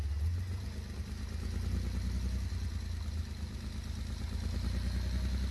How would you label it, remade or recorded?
recorded